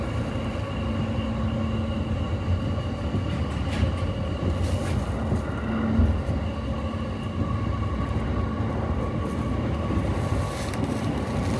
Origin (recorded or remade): recorded